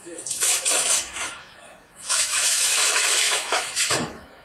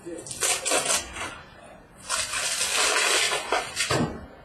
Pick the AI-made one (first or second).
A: first